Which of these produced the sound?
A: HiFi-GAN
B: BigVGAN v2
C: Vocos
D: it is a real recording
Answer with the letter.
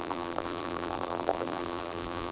B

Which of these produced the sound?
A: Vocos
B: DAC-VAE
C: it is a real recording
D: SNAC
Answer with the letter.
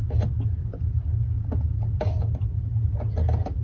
C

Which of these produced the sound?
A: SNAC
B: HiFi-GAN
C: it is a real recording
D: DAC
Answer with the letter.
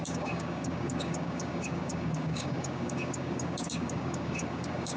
D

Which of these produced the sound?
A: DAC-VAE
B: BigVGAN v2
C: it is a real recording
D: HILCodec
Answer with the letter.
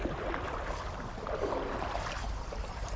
C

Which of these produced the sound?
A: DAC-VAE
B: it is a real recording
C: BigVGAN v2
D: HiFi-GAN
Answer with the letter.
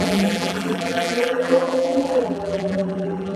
C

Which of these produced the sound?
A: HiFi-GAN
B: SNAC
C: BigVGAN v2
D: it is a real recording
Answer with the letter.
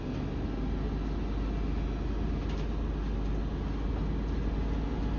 D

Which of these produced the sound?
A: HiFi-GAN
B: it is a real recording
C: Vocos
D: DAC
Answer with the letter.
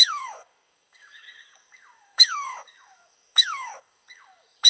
D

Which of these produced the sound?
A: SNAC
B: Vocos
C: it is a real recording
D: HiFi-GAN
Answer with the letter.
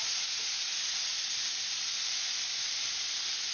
C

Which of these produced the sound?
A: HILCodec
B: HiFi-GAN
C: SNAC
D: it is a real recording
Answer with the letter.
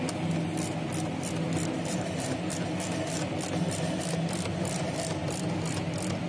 D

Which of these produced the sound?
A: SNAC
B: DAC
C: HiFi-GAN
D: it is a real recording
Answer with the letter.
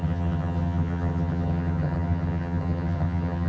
C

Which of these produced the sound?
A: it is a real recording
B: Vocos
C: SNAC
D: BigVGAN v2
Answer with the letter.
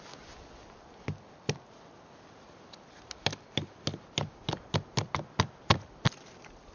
A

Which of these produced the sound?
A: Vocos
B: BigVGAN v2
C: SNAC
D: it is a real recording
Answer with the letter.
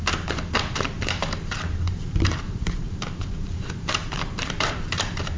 B